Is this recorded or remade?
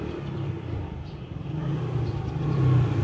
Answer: remade